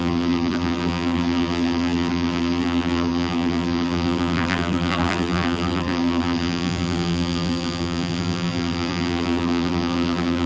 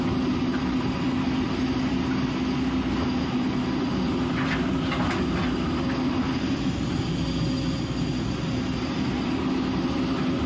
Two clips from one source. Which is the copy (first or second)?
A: first